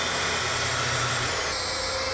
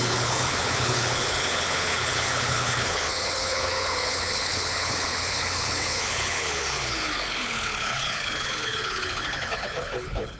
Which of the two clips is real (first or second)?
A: first